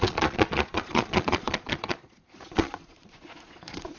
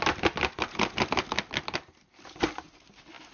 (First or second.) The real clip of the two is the second